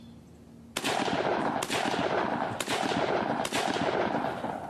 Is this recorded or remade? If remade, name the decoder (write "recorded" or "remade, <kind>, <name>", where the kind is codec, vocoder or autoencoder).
recorded